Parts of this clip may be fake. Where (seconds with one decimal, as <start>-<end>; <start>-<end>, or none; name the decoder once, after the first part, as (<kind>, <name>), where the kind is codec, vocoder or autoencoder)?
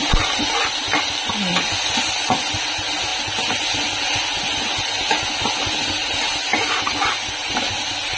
none